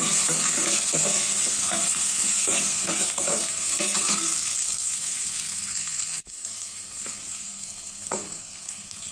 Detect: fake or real fake